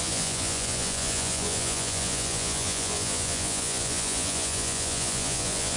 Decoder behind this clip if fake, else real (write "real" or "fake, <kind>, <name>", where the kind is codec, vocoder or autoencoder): fake, vocoder, Vocos